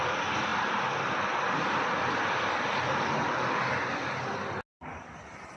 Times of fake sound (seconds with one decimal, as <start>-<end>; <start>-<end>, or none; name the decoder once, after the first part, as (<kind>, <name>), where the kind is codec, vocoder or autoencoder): none